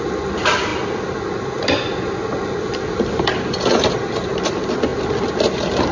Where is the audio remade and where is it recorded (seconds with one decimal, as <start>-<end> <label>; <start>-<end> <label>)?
0.0-0.7 remade; 0.7-2.6 recorded; 2.6-5.9 remade